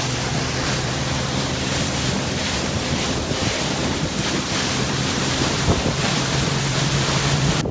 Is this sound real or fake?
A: fake